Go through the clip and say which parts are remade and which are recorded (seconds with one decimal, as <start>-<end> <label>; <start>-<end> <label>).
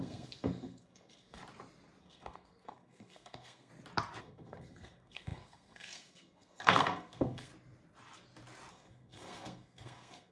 0.0-1.4 remade; 1.4-2.0 recorded; 2.0-3.7 remade; 3.7-4.2 recorded; 4.2-7.5 remade; 7.5-8.7 recorded; 8.7-10.3 remade